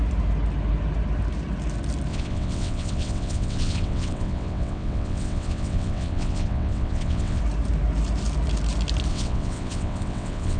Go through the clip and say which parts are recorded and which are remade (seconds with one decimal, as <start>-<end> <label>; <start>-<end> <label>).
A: 0.0-2.1 recorded; 2.1-7.4 remade; 7.4-9.1 recorded; 9.1-10.6 remade